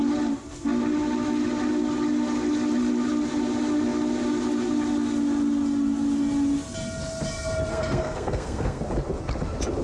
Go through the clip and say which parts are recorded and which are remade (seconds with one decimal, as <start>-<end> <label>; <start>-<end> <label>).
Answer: 0.0-7.7 recorded; 7.7-8.8 remade; 8.8-9.8 recorded